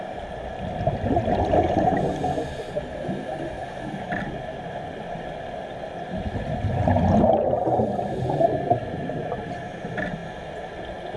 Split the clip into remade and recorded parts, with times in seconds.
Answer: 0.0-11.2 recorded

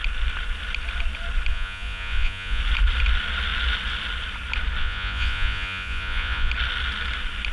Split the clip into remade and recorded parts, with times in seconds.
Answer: 0.0-1.5 recorded; 1.5-2.6 remade; 2.6-4.8 recorded; 4.8-6.5 remade; 6.5-7.5 recorded

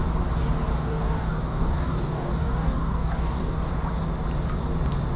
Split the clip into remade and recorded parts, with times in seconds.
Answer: 0.0-0.7 recorded; 0.7-3.7 remade; 3.7-5.2 recorded

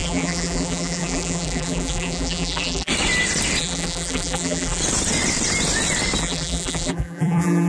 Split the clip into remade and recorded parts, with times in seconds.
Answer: 0.0-2.9 remade; 2.9-3.6 recorded; 3.6-4.8 remade; 4.8-6.2 recorded; 6.2-7.7 remade

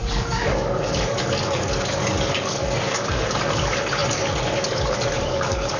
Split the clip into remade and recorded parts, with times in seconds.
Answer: 0.0-5.8 remade